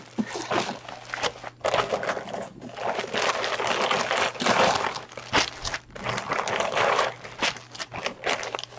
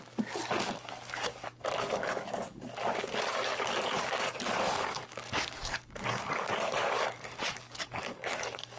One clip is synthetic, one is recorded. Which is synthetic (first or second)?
second